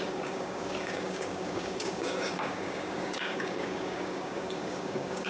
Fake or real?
fake